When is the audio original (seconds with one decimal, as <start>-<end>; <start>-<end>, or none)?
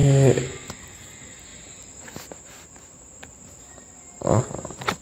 0.0-1.5; 4.4-5.0